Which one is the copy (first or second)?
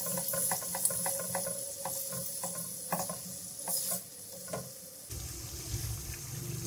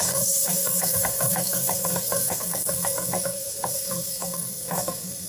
second